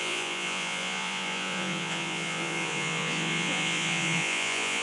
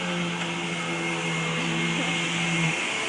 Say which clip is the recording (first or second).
second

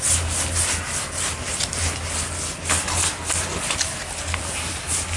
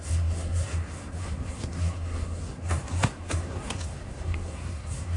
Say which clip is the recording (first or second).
first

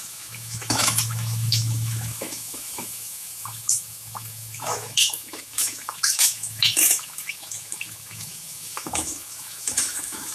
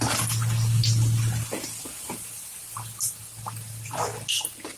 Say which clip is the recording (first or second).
second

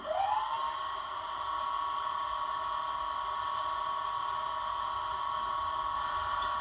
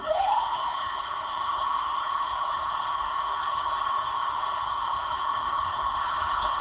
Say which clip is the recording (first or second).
first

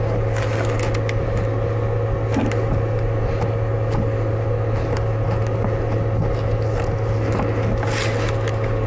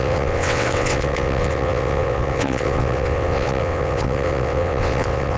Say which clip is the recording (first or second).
first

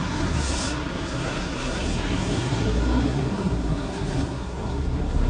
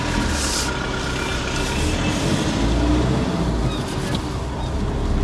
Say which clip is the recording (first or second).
second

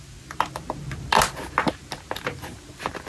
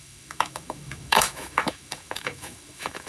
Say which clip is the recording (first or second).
first